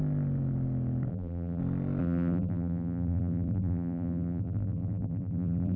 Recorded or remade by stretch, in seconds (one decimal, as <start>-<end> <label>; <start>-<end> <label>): 0.0-1.1 recorded; 1.1-1.6 remade; 1.6-2.0 recorded; 2.0-5.8 remade